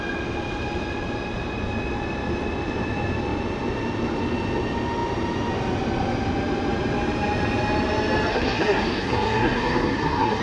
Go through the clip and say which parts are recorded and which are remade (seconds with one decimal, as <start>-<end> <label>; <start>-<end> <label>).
0.0-8.3 recorded; 8.3-10.4 remade